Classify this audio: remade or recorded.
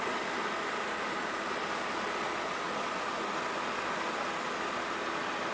recorded